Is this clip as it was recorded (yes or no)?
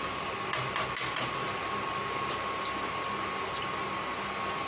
yes